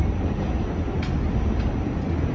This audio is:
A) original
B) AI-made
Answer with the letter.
A